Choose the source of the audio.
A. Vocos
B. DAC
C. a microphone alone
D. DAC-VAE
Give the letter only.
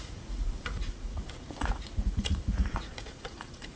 A